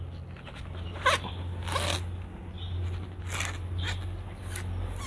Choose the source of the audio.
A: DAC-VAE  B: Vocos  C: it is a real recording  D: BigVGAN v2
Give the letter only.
C